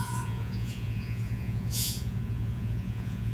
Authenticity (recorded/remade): remade